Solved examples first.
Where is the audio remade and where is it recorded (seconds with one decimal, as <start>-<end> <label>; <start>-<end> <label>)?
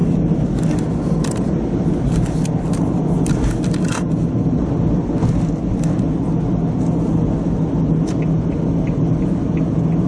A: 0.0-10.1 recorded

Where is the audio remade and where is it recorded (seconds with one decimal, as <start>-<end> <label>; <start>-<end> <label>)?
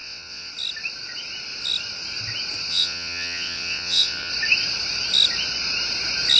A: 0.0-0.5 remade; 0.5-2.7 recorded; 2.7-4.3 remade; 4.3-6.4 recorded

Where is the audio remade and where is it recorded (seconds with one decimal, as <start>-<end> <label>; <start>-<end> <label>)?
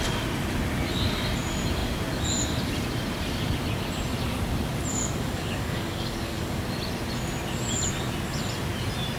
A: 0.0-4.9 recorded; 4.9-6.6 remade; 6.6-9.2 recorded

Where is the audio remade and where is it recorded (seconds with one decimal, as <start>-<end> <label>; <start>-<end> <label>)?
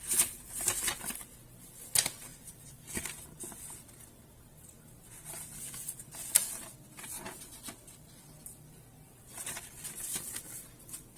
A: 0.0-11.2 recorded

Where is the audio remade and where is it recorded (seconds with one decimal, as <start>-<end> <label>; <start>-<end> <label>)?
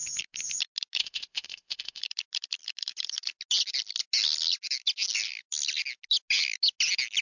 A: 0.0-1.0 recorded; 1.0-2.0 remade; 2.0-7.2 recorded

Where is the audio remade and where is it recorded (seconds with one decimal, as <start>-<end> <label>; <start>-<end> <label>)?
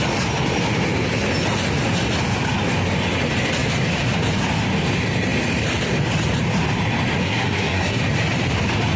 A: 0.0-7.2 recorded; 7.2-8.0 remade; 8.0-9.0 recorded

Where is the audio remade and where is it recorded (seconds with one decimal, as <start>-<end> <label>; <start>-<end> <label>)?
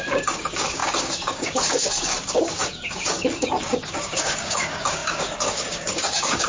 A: 0.0-6.5 remade